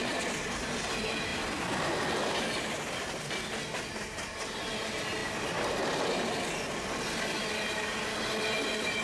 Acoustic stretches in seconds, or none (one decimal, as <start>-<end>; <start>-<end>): 0.0-1.3; 1.9-9.0